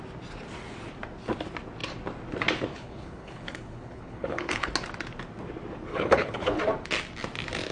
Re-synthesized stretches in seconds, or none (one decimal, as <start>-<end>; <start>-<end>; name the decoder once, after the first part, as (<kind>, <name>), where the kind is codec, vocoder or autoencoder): 2.7-4.7 (codec, HILCodec); 5.9-6.6